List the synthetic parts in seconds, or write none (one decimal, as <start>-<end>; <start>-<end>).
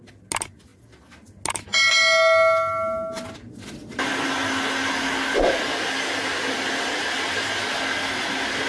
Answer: none